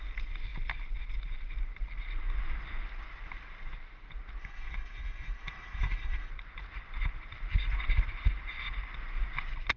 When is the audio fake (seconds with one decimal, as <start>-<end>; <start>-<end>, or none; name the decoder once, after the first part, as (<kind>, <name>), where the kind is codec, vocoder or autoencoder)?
4.4-6.3 (autoencoder, DAC-VAE)